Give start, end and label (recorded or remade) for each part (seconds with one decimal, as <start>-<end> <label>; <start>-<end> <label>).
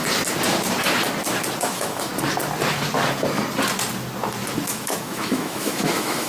0.0-1.6 recorded; 1.6-2.1 remade; 2.1-4.7 recorded; 4.7-6.3 remade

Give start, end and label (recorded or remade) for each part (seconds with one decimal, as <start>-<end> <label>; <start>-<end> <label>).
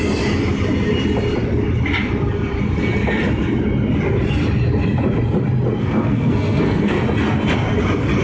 0.0-5.8 recorded; 5.8-6.9 remade; 6.9-8.2 recorded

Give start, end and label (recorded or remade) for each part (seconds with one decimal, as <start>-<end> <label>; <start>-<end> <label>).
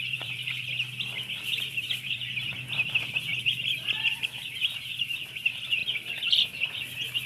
0.0-5.8 remade; 5.8-7.3 recorded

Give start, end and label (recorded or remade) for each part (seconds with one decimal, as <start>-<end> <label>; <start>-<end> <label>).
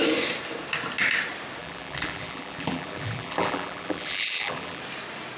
0.0-1.6 recorded; 1.6-4.8 remade; 4.8-5.4 recorded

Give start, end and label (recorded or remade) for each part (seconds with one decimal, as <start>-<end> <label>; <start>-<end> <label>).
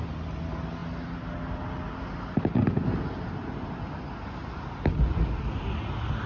0.0-6.3 recorded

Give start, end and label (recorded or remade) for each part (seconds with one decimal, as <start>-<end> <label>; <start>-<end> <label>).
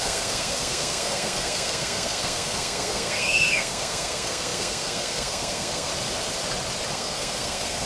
0.0-5.9 remade; 5.9-6.9 recorded; 6.9-7.9 remade